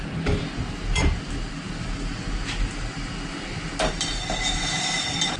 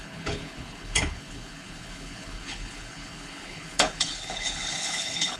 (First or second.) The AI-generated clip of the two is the second